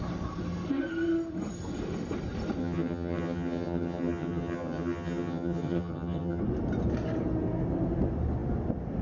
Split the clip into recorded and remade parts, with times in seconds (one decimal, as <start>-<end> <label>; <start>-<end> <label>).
0.0-2.6 recorded; 2.6-6.4 remade; 6.4-9.0 recorded